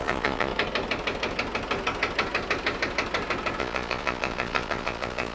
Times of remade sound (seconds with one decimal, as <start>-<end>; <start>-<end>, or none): 0.0-0.5; 3.6-5.3